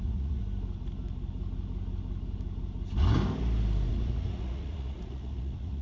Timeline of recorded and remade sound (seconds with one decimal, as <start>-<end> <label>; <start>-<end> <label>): 0.0-0.4 remade; 0.4-3.9 recorded; 3.9-5.8 remade